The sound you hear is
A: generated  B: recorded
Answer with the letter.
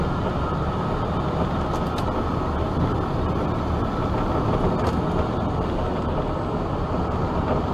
B